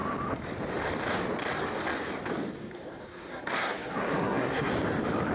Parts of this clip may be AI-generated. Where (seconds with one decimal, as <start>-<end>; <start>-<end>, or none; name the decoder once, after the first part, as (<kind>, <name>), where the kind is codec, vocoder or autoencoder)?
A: 2.6-4.7 (codec, SNAC)